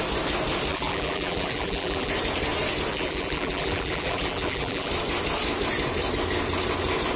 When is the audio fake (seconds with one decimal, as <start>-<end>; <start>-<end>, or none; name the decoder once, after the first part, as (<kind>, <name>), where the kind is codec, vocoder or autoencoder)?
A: 0.7-2.1 (vocoder, BigVGAN v2); 2.9-4.9